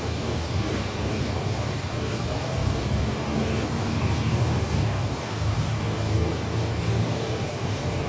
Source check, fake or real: fake